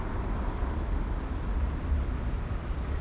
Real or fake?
real